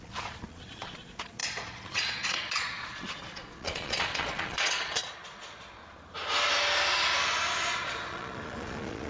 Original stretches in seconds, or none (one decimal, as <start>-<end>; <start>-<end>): 5.8-7.6